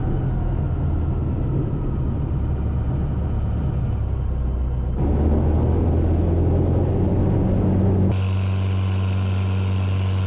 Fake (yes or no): no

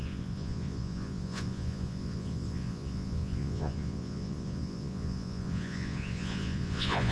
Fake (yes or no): yes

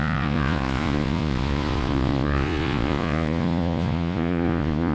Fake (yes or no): yes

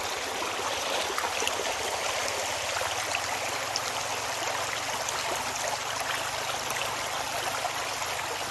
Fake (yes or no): no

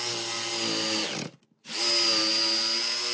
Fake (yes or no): no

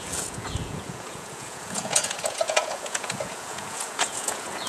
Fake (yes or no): yes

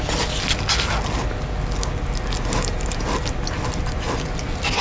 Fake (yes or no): no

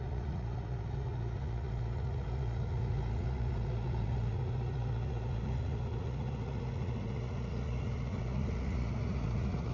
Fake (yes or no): yes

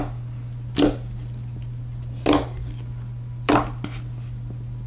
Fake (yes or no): no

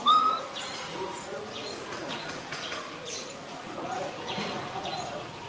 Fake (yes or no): yes